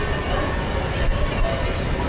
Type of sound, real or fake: real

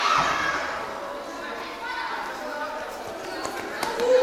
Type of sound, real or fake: real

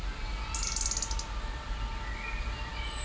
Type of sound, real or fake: real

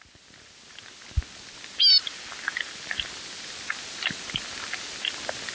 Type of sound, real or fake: real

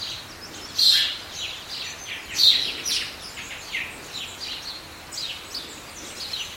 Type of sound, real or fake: real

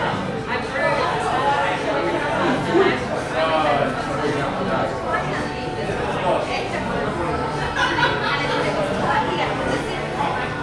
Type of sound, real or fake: real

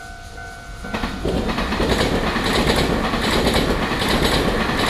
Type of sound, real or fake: real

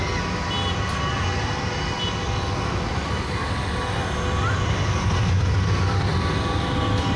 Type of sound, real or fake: real